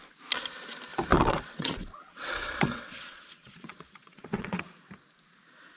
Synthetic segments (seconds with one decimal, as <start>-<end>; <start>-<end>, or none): 1.1-4.6